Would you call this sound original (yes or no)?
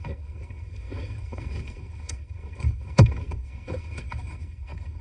no